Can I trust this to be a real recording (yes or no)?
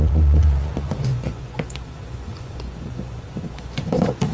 no